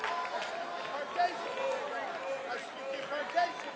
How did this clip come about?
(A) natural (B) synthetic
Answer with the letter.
A